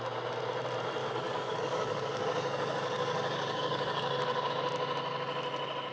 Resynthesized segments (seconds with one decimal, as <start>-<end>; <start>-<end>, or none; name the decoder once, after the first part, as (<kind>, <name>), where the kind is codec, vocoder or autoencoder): 1.0-4.5 (codec, DAC)